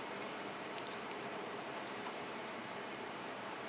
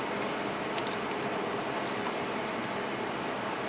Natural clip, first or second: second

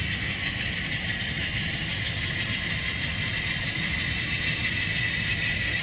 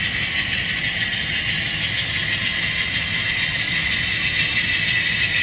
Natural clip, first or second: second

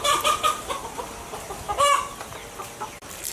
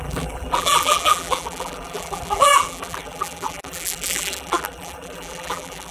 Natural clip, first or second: first